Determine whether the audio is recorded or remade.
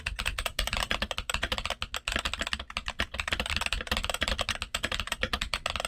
recorded